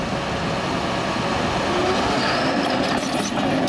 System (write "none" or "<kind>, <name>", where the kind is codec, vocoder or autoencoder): none